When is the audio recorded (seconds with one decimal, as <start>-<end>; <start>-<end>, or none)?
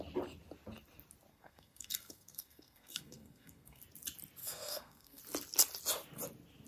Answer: 0.0-1.3; 3.8-4.4; 5.2-6.7